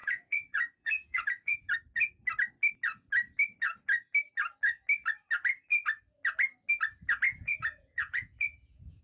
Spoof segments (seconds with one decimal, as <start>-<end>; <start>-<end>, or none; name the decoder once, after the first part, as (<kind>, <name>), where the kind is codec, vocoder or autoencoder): 0.0-1.7 (vocoder, Vocos); 7.3-9.0